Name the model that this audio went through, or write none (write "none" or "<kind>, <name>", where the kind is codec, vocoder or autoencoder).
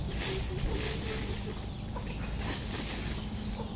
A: none